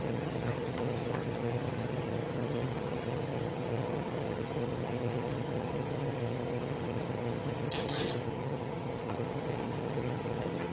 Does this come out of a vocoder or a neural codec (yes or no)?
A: yes